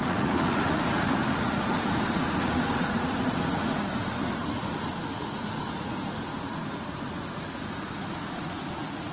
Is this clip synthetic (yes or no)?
yes